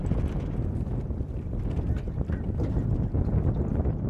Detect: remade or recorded recorded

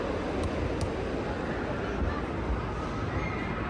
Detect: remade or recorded recorded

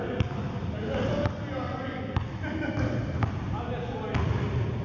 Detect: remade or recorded recorded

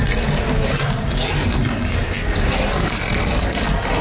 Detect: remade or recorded recorded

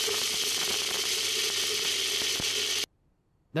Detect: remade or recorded recorded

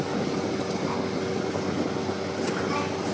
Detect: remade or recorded recorded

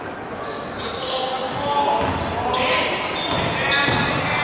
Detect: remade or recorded recorded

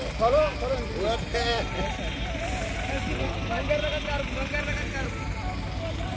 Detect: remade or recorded recorded